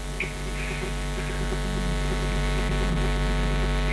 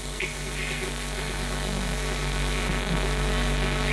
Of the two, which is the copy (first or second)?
second